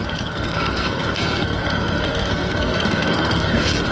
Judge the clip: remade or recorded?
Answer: remade